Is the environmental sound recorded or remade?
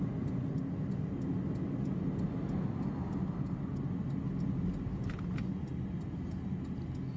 recorded